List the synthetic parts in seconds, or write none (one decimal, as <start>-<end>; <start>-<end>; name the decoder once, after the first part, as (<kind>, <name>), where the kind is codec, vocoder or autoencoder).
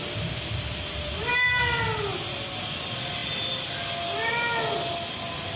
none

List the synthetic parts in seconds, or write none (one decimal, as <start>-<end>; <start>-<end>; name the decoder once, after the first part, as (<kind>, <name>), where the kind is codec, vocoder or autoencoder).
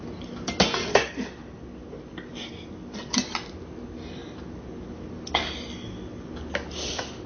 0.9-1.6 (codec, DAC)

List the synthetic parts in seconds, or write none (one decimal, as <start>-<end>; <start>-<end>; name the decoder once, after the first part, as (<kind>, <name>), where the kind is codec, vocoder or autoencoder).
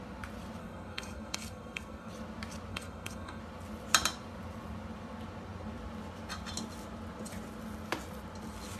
0.6-2.1 (codec, SNAC); 2.7-3.4